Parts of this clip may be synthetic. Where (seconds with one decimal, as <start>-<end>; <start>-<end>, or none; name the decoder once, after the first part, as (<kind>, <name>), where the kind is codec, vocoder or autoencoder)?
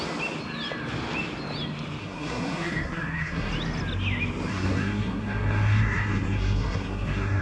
2.0-3.5 (codec, SNAC); 4.5-7.4